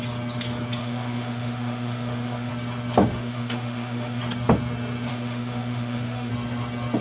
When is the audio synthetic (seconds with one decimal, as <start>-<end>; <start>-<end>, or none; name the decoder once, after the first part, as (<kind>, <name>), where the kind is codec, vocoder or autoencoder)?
0.8-2.5 (autoencoder, DAC-VAE); 3.1-4.2; 5.1-6.3